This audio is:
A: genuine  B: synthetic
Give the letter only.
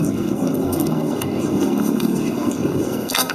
B